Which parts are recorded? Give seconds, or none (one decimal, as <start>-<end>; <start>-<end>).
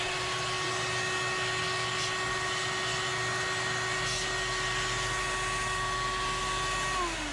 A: 0.0-7.3